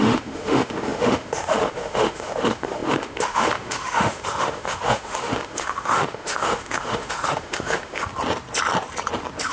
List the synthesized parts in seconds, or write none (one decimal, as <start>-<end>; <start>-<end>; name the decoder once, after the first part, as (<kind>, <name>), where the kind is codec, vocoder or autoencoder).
0.0-8.1 (autoencoder, DAC-VAE)